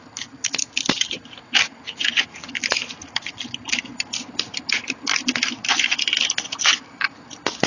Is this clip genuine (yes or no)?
yes